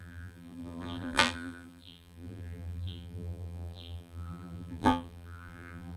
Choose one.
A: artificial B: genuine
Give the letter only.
A